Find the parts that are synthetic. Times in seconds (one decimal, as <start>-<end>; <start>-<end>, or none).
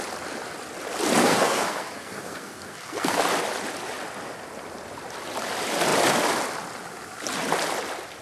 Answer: 1.2-3.2